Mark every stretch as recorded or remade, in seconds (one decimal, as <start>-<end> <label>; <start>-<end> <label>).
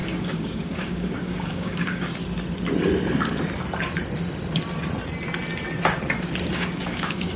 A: 0.0-2.1 remade; 2.1-6.5 recorded; 6.5-7.4 remade